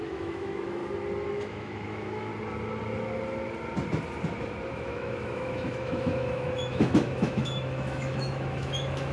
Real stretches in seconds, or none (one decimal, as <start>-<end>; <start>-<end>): 0.8-1.3; 2.3-4.7